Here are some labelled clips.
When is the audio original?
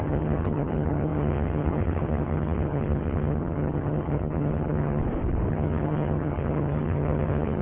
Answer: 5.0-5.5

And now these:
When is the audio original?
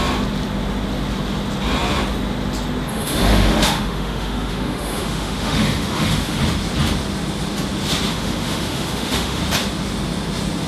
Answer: 0.0-2.9; 6.4-8.1; 9.4-10.7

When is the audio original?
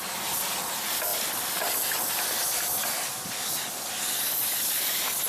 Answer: 0.0-5.3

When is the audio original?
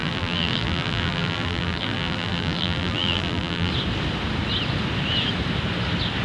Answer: 3.7-6.2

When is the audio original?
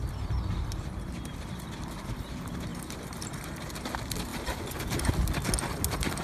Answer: 0.0-2.7; 3.7-4.3; 5.1-6.2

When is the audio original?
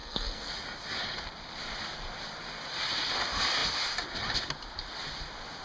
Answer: 0.5-5.6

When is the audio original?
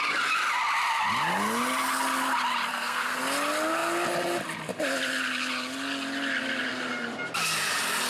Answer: 0.0-2.7; 3.2-8.1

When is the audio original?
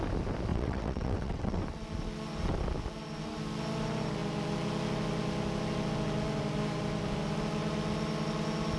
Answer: 0.0-0.5; 1.6-8.8